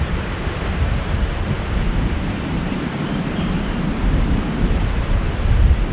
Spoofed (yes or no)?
yes